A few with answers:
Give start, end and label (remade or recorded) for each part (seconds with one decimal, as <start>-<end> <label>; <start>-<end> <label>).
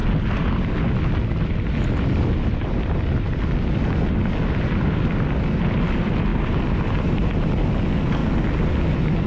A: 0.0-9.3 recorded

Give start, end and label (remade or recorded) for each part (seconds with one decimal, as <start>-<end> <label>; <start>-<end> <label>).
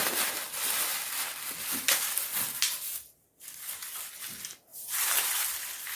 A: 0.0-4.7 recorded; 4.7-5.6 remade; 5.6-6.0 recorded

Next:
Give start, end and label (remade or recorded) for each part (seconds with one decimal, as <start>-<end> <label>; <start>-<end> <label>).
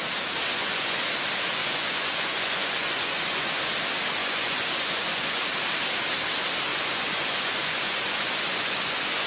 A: 0.0-0.5 recorded; 0.5-1.0 remade; 1.0-1.6 recorded; 1.6-3.5 remade; 3.5-4.2 recorded; 4.2-5.4 remade; 5.4-6.7 recorded; 6.7-9.3 remade